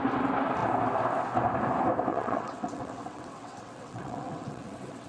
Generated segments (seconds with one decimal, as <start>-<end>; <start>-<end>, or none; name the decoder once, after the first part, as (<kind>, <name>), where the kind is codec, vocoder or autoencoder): 2.1-5.1 (vocoder, WaveNeXt)